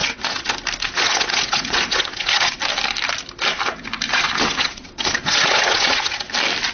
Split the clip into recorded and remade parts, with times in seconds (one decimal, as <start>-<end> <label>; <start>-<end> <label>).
0.0-0.5 remade; 0.5-0.9 recorded; 0.9-2.5 remade; 2.5-4.1 recorded; 4.1-6.3 remade; 6.3-6.7 recorded